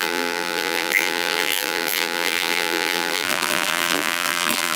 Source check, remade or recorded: remade